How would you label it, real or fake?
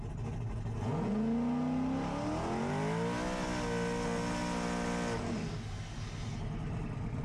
real